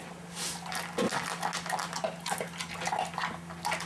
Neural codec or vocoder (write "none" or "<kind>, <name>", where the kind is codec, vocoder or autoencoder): none